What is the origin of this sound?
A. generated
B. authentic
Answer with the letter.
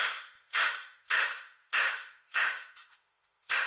A